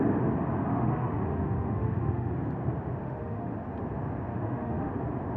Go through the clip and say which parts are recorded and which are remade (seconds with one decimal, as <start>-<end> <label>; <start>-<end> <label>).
0.0-0.7 recorded; 0.7-2.3 remade; 2.3-3.0 recorded; 3.0-3.5 remade; 3.5-4.3 recorded; 4.3-4.9 remade; 4.9-5.4 recorded